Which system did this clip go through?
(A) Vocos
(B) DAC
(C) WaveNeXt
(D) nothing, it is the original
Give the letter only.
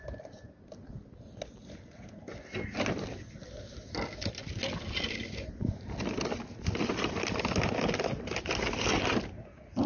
D